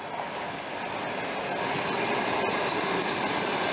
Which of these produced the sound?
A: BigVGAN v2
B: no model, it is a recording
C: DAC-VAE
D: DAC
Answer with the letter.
B